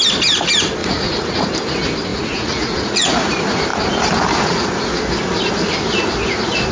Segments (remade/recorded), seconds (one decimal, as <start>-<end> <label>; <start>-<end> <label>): 0.0-0.8 recorded; 0.8-1.4 remade; 1.4-2.1 recorded; 2.1-3.3 remade; 3.3-6.7 recorded